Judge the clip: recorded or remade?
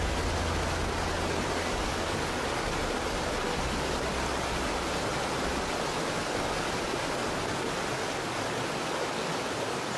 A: recorded